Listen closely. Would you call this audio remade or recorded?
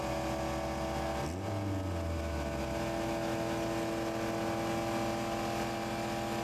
recorded